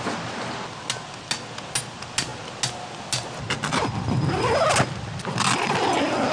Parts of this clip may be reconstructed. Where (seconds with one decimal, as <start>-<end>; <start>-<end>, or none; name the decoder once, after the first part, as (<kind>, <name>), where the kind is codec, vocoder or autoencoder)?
none